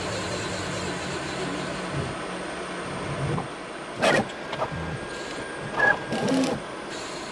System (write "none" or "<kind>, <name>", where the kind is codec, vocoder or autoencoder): none